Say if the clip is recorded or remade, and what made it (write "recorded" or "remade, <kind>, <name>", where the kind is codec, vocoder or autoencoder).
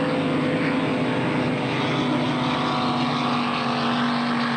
recorded